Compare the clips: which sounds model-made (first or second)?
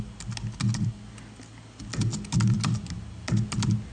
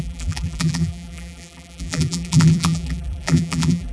second